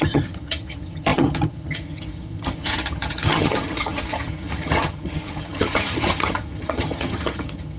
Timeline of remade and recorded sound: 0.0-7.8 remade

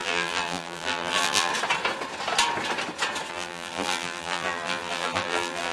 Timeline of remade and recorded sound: 0.0-1.5 remade; 1.5-3.3 recorded; 3.3-5.7 remade

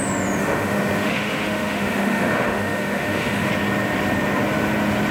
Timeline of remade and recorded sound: 0.0-0.4 recorded; 0.4-3.5 remade; 3.5-5.1 recorded

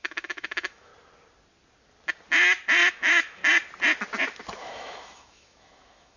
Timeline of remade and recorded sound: 0.0-0.9 remade; 0.9-2.9 recorded; 2.9-3.4 remade; 3.4-4.6 recorded; 4.6-6.2 remade